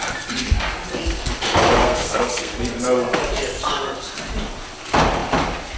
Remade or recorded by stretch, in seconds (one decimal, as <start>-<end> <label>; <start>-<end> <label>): 0.0-1.8 recorded; 1.8-2.6 remade; 2.6-5.8 recorded